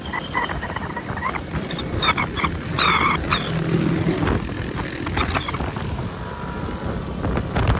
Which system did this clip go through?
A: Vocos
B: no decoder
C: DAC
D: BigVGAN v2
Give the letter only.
B